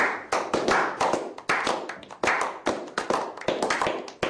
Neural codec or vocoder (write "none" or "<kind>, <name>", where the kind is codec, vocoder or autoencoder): none